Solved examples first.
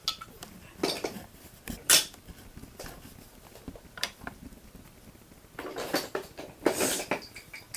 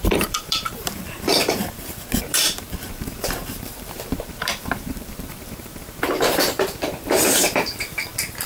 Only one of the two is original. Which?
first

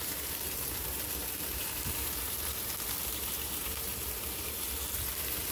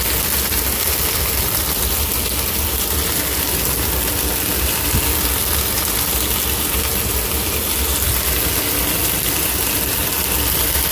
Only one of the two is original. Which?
second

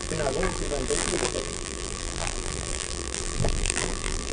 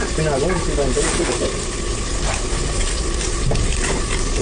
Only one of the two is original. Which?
second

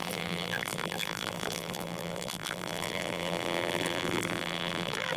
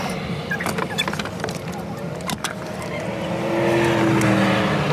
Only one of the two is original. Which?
second